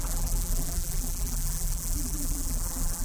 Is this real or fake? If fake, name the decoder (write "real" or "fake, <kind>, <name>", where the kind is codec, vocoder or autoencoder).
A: fake, vocoder, BigVGAN v2